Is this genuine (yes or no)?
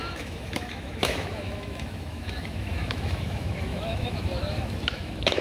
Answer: no